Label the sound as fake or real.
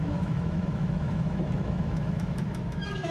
fake